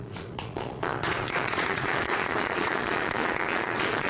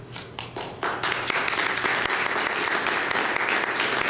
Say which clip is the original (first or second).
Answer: second